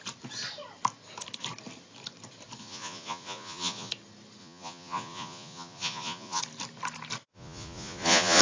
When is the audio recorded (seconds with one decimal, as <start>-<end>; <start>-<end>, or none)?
0.0-2.6; 3.9-4.4; 6.4-7.2